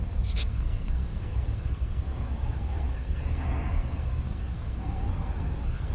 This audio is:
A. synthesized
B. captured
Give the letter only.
A